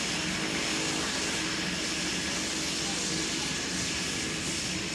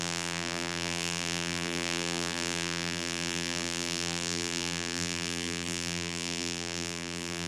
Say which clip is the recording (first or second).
first